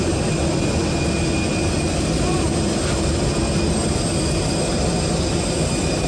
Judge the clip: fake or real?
real